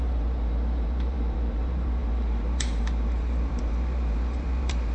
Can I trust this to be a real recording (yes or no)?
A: no